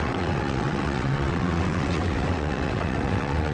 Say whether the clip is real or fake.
fake